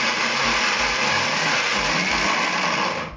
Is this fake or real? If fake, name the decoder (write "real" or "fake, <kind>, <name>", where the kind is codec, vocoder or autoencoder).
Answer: real